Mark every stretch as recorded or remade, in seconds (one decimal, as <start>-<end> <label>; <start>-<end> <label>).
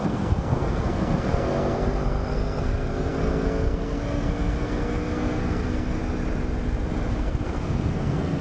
0.0-6.0 remade; 6.0-7.1 recorded; 7.1-8.4 remade